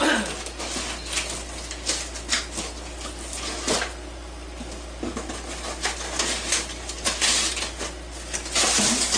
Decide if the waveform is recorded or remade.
recorded